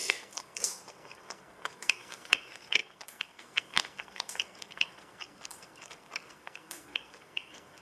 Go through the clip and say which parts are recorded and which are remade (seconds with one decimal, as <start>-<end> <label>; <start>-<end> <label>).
0.0-7.8 remade